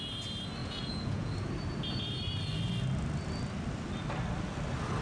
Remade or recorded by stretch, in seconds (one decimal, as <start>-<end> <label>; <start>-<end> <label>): 0.0-0.6 recorded; 0.6-1.3 remade; 1.3-5.0 recorded